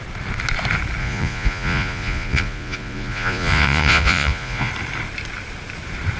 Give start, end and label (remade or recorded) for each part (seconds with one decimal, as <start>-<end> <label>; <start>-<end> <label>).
0.0-1.0 recorded; 1.0-4.7 remade; 4.7-6.2 recorded